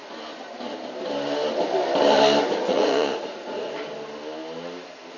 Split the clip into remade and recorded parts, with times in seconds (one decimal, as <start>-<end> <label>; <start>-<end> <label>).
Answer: 0.0-2.7 recorded; 2.7-3.8 remade; 3.8-5.2 recorded